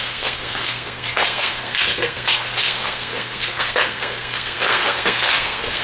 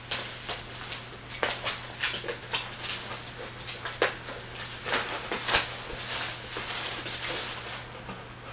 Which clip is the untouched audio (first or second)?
second